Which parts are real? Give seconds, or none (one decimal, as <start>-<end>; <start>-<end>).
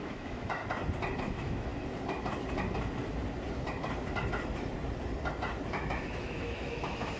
0.6-1.2; 1.7-5.7